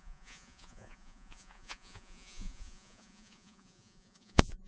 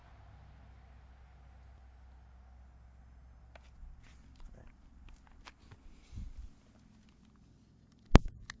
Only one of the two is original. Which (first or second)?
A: second